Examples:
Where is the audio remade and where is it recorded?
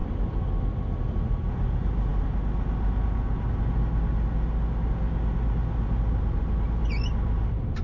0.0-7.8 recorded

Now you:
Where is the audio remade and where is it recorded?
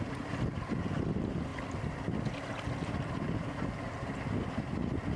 0.0-5.2 recorded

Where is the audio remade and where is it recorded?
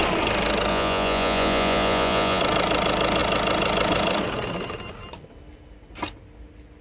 0.0-0.7 recorded; 0.7-2.4 remade; 2.4-6.8 recorded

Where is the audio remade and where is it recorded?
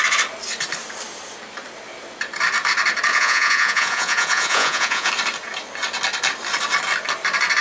0.0-3.1 recorded; 3.1-5.1 remade; 5.1-7.6 recorded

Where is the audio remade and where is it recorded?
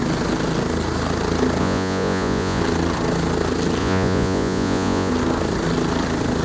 0.0-1.6 recorded; 1.6-2.6 remade; 2.6-3.8 recorded; 3.8-5.1 remade; 5.1-6.4 recorded